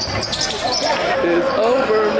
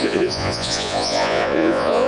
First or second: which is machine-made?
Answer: second